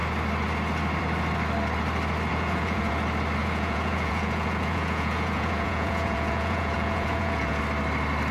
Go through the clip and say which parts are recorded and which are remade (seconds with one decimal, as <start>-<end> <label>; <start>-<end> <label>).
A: 0.0-2.3 recorded; 2.3-2.9 remade; 2.9-3.4 recorded; 3.4-7.6 remade; 7.6-8.3 recorded